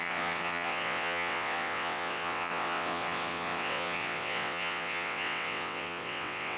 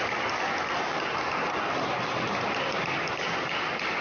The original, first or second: second